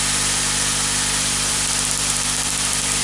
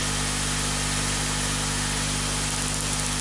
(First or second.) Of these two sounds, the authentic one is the second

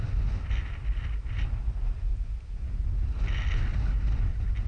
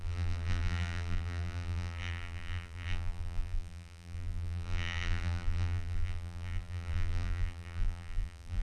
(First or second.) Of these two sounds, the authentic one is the first